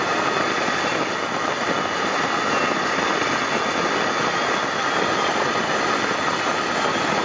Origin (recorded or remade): recorded